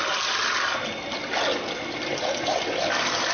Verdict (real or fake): real